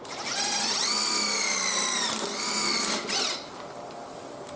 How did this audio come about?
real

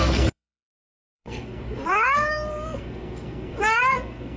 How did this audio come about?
fake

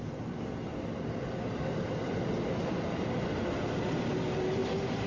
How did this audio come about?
real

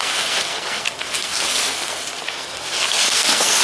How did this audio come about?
fake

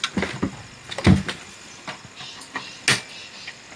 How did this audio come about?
real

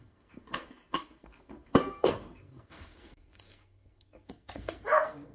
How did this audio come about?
fake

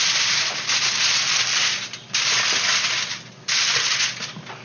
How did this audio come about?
real